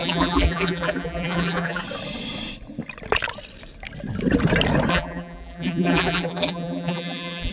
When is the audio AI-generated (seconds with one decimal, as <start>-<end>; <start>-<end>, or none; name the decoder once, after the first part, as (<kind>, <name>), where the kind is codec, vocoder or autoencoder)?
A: 0.0-1.8 (vocoder, BigVGAN v2); 4.9-7.5